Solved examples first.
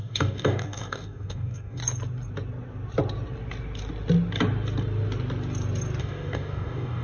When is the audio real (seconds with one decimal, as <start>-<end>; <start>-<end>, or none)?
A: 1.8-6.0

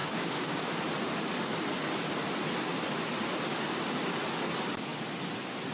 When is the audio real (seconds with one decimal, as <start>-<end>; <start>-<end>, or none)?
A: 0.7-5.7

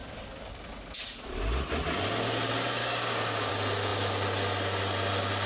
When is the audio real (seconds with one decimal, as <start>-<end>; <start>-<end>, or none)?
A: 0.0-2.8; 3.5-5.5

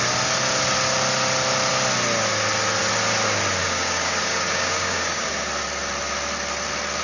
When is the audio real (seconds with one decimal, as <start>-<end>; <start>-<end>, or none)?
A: 0.0-3.6; 5.3-7.0